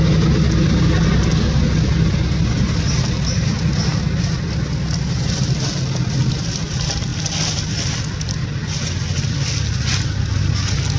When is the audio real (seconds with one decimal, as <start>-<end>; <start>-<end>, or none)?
0.0-11.0